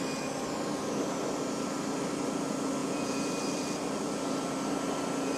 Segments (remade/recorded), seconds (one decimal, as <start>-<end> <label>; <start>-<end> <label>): 0.0-2.8 recorded; 2.8-3.3 remade; 3.3-5.4 recorded